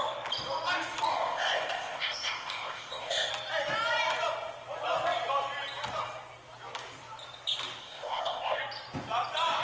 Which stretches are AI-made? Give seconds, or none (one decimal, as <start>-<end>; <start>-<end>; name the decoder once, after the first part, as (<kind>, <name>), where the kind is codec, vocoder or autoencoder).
1.1-3.3 (codec, ZipCodec); 7.8-8.6